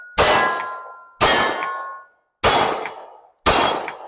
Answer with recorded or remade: recorded